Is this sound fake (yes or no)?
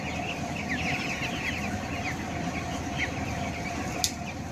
no